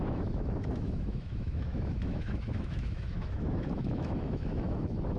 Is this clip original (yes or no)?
no